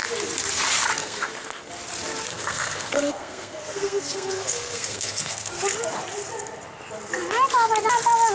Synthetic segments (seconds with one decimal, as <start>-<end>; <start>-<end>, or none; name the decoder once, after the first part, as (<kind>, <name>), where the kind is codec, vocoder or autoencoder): 1.0-1.7 (codec, SNAC); 2.3-5.6